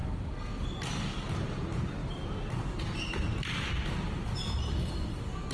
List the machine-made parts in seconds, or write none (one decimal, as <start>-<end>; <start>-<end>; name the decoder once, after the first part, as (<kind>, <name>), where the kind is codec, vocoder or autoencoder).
none